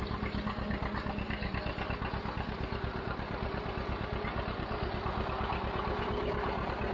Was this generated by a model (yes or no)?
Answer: no